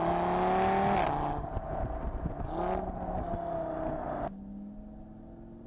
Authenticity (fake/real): real